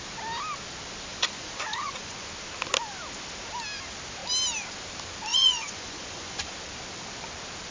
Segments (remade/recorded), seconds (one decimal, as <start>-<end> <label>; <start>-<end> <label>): 0.0-1.1 recorded; 1.1-2.3 remade; 2.3-5.3 recorded; 5.3-6.5 remade; 6.5-7.7 recorded